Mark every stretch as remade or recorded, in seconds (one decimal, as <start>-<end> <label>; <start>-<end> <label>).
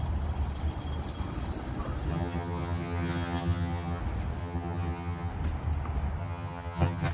0.0-2.1 recorded; 2.1-4.0 remade; 4.0-4.4 recorded; 4.4-5.3 remade; 5.3-6.2 recorded; 6.2-7.1 remade